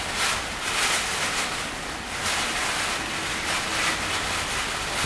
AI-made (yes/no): no